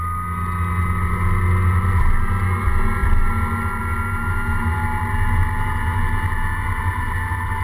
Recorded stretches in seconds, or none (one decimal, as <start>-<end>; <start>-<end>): 0.0-7.6